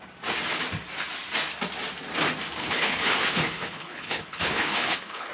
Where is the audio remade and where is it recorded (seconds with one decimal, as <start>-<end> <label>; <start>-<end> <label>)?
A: 0.0-2.6 recorded; 2.6-5.3 remade